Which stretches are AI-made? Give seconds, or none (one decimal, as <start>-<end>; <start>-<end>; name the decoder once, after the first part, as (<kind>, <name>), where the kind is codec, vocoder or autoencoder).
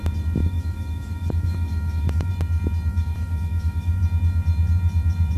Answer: 0.4-2.3 (autoencoder, DAC-VAE); 2.9-4.0